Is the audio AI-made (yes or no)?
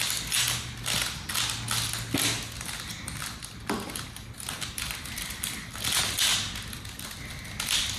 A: no